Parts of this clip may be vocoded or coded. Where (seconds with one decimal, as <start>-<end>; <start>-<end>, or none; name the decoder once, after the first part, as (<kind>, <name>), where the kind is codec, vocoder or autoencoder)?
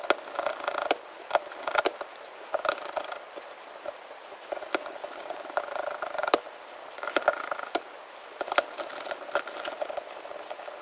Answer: none